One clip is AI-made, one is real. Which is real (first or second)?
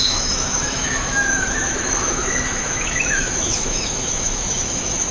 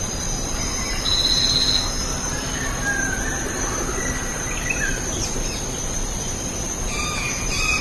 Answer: second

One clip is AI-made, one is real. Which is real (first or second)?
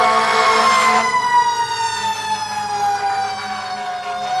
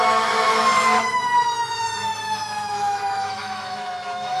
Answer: first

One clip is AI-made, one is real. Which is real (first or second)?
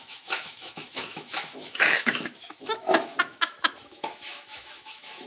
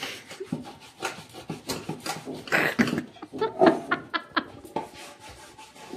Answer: second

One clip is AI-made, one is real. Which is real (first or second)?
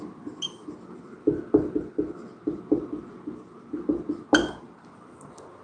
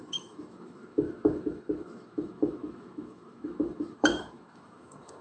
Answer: first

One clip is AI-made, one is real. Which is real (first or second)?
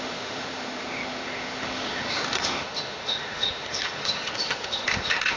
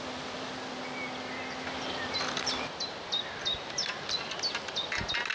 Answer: second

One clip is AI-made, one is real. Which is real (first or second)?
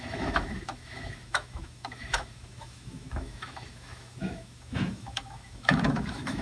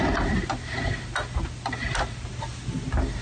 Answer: second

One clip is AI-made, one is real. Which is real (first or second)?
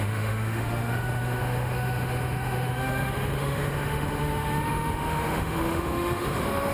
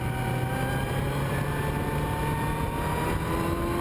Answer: second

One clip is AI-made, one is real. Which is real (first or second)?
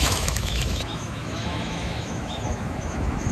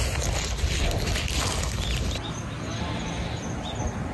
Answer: second